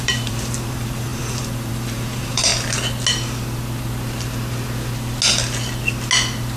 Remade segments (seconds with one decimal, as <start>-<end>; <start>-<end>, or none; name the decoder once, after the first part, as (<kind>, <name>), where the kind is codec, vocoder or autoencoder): 0.0-2.5 (vocoder, BigVGAN v2)